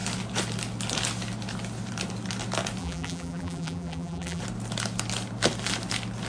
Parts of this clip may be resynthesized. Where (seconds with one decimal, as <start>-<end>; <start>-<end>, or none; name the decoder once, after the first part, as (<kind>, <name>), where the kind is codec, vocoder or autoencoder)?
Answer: 2.8-4.4 (vocoder, BigVGAN v2)